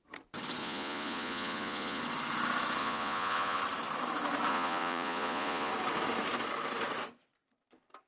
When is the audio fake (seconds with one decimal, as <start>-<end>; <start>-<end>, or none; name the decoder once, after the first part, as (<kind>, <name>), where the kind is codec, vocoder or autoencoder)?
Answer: 0.6-2.0 (vocoder, Vocos); 2.8-3.6; 4.5-5.7